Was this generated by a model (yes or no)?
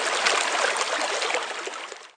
no